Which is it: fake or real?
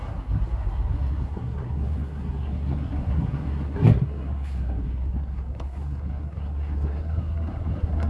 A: fake